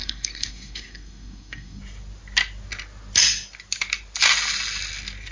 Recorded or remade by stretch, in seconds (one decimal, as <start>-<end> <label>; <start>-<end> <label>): 0.0-1.8 remade; 1.8-5.3 recorded